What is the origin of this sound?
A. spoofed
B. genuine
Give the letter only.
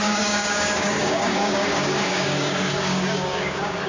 A